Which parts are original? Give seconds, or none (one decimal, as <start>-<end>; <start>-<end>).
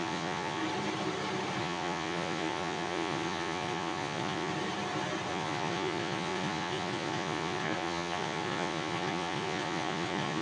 0.6-1.6; 4.5-5.3